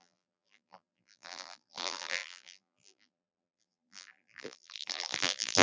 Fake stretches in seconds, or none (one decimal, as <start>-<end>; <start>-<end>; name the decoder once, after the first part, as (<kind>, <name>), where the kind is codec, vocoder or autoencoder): 0.0-5.6 (vocoder, BigVGAN v2)